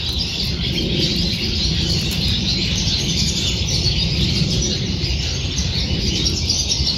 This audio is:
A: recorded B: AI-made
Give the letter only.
A